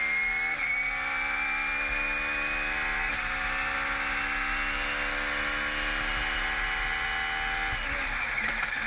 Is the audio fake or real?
real